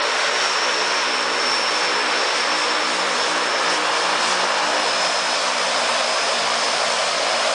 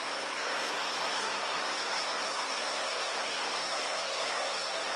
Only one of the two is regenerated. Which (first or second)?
second